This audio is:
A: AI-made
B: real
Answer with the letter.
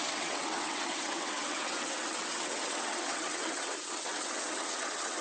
A